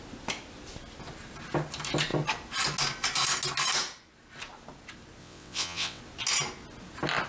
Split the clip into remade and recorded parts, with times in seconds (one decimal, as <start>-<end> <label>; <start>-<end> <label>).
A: 0.0-5.2 recorded; 5.2-6.0 remade; 6.0-7.3 recorded